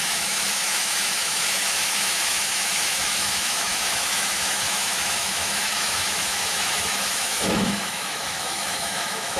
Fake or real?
fake